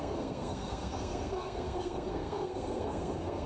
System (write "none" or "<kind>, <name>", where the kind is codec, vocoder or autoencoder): codec, SNAC